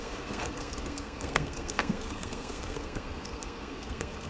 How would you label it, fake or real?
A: fake